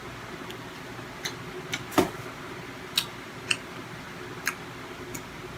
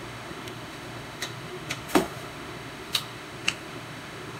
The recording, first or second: first